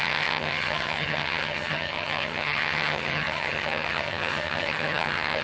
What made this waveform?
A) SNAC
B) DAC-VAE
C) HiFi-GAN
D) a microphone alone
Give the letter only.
C